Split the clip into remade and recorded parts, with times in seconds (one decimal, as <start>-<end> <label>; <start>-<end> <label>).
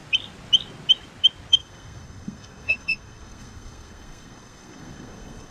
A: 0.0-1.5 recorded; 1.5-5.5 remade